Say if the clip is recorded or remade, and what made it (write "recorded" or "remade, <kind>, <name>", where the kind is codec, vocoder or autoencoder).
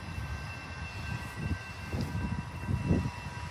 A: recorded